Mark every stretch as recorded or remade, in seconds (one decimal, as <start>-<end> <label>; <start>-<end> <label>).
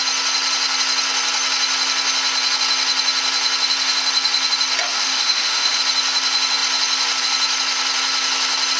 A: 0.0-4.9 recorded; 4.9-5.8 remade; 5.8-8.8 recorded